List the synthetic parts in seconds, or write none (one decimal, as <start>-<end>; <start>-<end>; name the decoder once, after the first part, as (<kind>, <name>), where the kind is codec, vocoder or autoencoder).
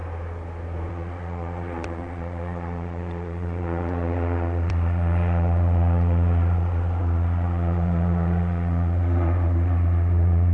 0.9-10.5 (vocoder, Vocos)